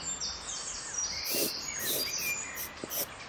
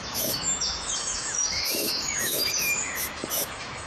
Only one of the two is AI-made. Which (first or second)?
second